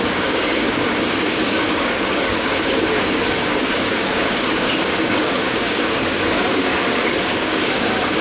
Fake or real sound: fake